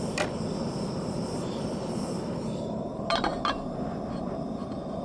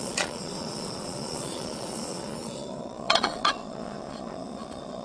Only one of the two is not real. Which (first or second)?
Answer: second